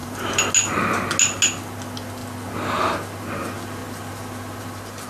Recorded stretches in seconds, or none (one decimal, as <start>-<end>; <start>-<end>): 0.5-5.1